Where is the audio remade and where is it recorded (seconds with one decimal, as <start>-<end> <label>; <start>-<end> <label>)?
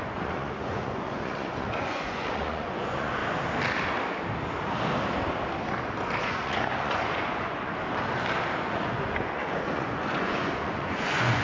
0.0-3.2 remade; 3.2-6.2 recorded; 6.2-7.7 remade; 7.7-8.6 recorded; 8.6-11.4 remade